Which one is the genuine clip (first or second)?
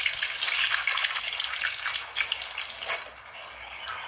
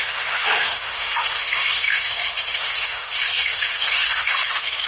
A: first